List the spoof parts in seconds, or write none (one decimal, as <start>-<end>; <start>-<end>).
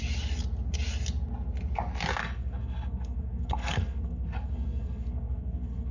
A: 2.2-5.9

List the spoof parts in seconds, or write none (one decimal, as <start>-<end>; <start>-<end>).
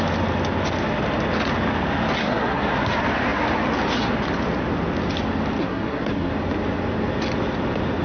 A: 2.2-2.7; 5.6-6.3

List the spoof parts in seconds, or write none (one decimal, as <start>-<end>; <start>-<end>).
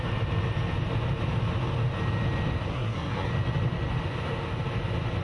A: 2.7-3.3